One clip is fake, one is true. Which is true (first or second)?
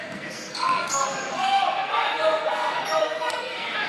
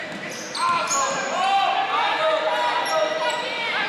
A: second